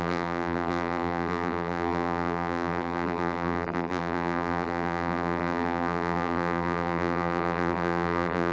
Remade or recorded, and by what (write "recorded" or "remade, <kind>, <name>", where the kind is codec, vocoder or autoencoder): remade, vocoder, BigVGAN v2